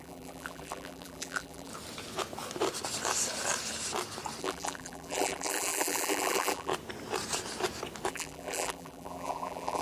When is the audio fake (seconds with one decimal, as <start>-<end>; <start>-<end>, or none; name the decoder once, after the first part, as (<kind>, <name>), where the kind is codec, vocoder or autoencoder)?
0.0-1.7 (vocoder, BigVGAN v2); 4.4-6.7; 8.1-9.8